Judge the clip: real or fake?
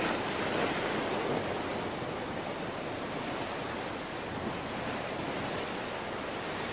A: real